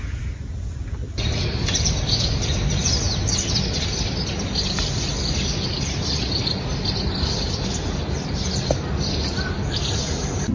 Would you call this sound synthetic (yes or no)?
no